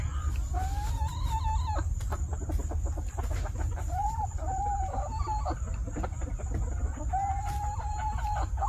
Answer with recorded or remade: recorded